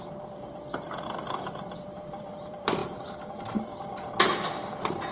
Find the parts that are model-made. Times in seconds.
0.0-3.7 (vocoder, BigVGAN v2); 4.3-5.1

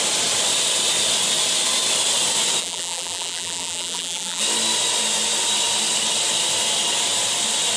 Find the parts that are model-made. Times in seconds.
2.6-4.4 (vocoder, BigVGAN v2)

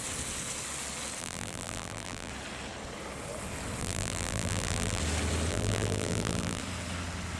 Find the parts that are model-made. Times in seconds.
1.2-2.3 (vocoder, BigVGAN v2); 3.8-5.0; 5.5-6.6

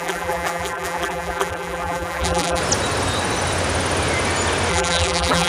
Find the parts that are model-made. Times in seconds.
0.0-2.6 (vocoder, BigVGAN v2); 4.7-5.5

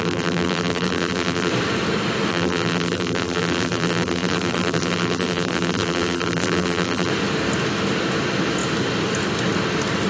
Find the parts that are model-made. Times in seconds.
0.0-1.5 (vocoder, BigVGAN v2); 2.3-7.1

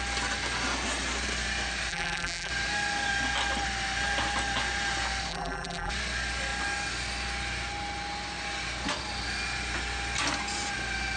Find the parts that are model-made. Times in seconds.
1.9-2.5 (vocoder, BigVGAN v2); 5.3-5.9